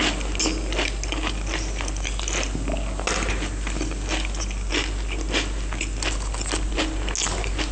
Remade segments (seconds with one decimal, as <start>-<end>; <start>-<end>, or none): none